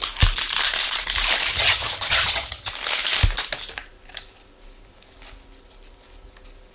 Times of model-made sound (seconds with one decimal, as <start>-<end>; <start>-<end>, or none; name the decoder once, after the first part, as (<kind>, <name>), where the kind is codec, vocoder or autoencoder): 1.5-2.7 (vocoder, HiFi-GAN)